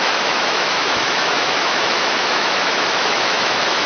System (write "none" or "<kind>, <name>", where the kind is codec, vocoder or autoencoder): autoencoder, DAC-VAE